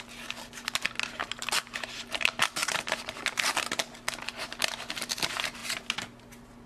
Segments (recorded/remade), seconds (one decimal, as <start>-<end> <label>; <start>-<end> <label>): 0.0-6.7 recorded